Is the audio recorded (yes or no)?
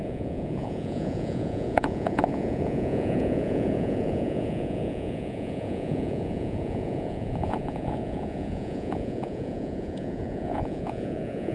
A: no